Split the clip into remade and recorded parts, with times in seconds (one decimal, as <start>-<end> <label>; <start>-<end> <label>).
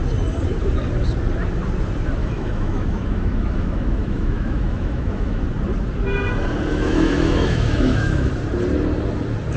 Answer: 0.0-2.2 recorded; 2.2-5.4 remade; 5.4-6.7 recorded; 6.7-8.3 remade; 8.3-9.6 recorded